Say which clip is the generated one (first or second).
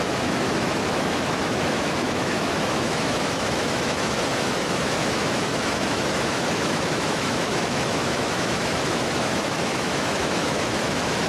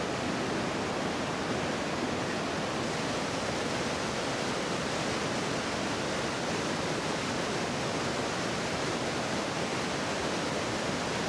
first